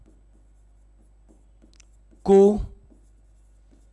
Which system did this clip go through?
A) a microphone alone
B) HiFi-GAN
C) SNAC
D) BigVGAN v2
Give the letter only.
A